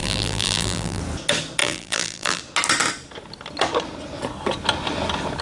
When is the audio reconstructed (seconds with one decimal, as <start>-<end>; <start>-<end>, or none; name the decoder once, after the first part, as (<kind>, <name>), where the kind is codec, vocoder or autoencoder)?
0.0-1.0 (vocoder, BigVGAN v2); 1.6-2.4